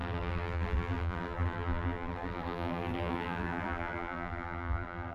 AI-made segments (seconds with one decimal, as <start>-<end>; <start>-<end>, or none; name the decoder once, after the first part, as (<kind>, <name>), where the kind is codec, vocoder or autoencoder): 0.0-5.1 (vocoder, BigVGAN v2)